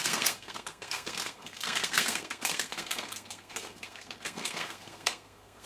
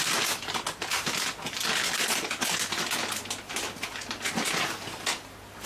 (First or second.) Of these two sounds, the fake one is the first